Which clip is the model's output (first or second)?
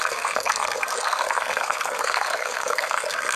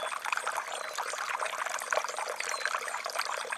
first